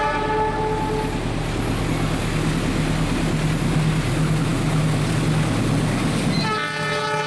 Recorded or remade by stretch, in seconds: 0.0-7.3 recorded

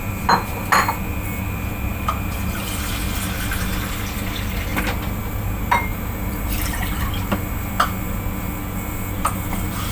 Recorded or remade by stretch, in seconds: 0.0-1.9 recorded; 1.9-2.7 remade; 2.7-5.9 recorded; 5.9-7.7 remade; 7.7-9.9 recorded

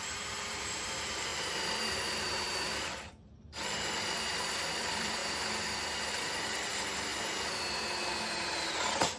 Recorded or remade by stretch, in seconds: 0.0-5.2 remade; 5.2-6.1 recorded; 6.1-7.1 remade; 7.1-8.4 recorded; 8.4-9.2 remade

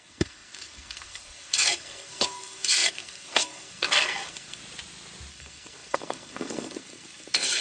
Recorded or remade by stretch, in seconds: 0.0-4.6 remade; 4.6-5.3 recorded; 5.3-7.6 remade

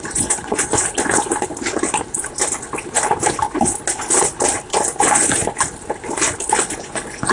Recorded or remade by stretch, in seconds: 0.0-0.7 remade; 0.7-5.0 recorded; 5.0-5.4 remade; 5.4-6.8 recorded; 6.8-7.3 remade

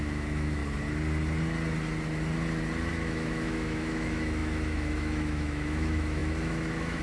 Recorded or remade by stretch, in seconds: 0.0-0.6 remade; 0.6-2.9 recorded; 2.9-7.0 remade